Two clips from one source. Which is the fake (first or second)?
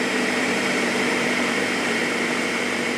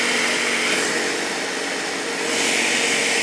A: first